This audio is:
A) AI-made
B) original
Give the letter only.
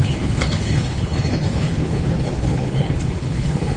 A